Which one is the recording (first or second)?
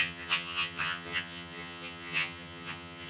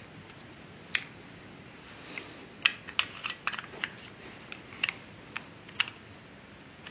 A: second